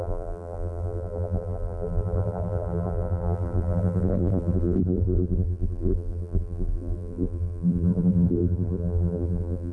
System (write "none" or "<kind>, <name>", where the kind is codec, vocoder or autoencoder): vocoder, BigVGAN v2